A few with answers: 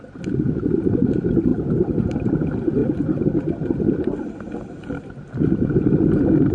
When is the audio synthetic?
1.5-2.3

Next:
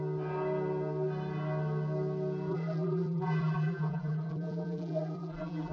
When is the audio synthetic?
2.5-5.7